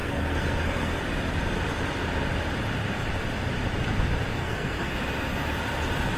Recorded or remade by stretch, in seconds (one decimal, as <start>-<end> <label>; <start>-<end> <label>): 0.0-1.0 remade; 1.0-4.4 recorded; 4.4-4.9 remade; 4.9-6.2 recorded